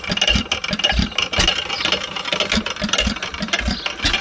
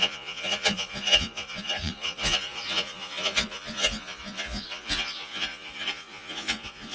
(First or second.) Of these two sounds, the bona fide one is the first